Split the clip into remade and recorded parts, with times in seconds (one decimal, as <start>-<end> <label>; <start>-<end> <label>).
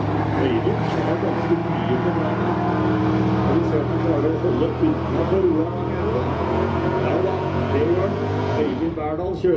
0.0-6.0 recorded; 6.0-8.9 remade; 8.9-9.6 recorded